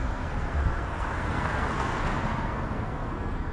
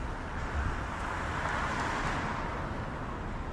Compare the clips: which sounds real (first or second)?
second